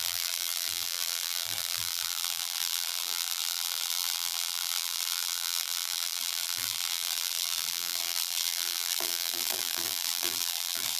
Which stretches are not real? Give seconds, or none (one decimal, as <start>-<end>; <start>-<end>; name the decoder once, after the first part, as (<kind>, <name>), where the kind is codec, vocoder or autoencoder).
0.0-11.0 (vocoder, BigVGAN v2)